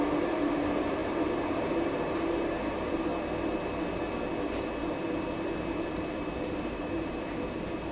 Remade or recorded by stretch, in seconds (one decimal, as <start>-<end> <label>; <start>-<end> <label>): 0.0-3.1 remade; 3.1-4.9 recorded; 4.9-7.9 remade